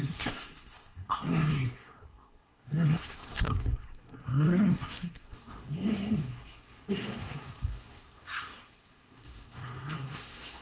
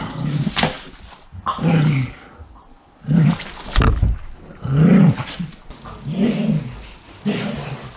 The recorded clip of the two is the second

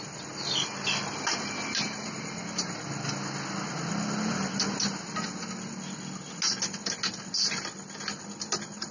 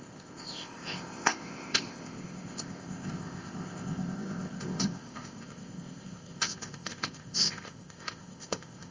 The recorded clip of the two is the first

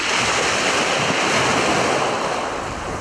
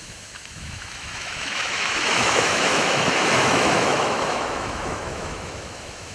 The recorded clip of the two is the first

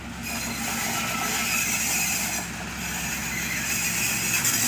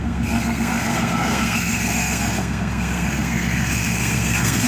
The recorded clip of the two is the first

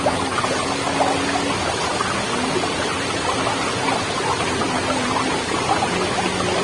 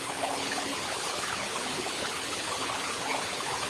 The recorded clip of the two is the first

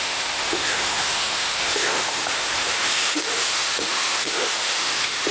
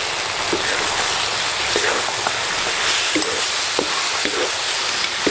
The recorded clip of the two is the second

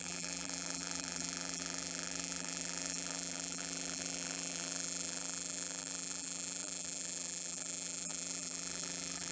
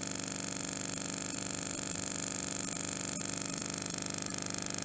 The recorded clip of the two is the second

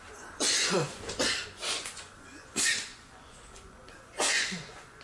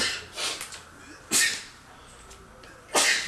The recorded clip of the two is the second